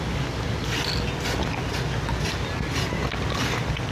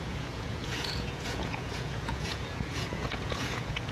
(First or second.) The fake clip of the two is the second